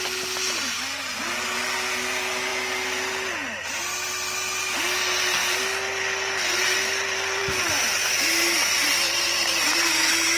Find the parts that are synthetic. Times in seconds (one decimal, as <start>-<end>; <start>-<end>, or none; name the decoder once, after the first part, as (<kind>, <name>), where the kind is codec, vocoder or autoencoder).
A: 5.4-7.4 (vocoder, BigVGAN v2)